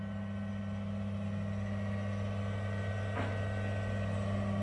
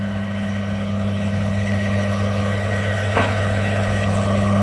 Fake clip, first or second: second